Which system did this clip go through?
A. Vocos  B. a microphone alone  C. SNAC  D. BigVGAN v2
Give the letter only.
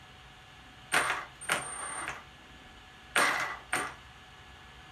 B